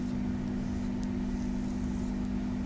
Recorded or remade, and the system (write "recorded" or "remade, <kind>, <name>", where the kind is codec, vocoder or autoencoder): recorded